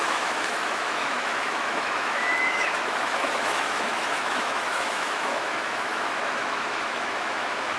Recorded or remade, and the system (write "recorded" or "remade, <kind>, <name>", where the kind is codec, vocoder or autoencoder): remade, autoencoder, DAC-VAE